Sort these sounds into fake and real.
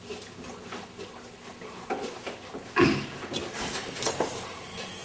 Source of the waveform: real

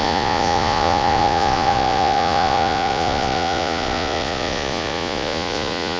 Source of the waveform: fake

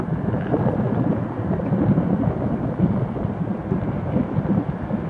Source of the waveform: real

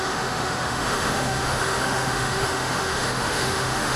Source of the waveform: fake